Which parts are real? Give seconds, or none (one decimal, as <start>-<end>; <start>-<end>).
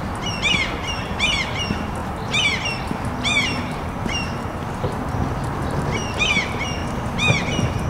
0.0-7.9